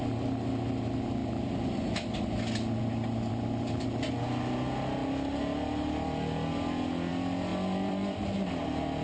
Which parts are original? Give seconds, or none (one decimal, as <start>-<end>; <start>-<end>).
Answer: 0.0-1.2; 1.8-7.5; 8.3-9.0